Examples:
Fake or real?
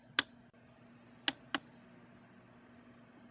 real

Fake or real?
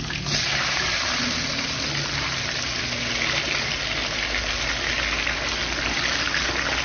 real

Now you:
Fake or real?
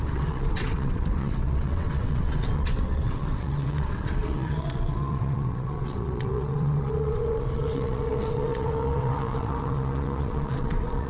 fake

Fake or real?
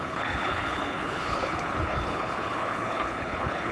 fake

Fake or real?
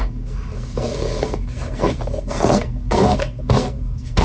fake